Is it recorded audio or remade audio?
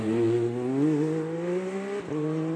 recorded